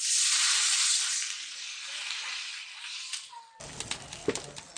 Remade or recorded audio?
recorded